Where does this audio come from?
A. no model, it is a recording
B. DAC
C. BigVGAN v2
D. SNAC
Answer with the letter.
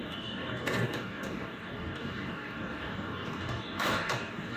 B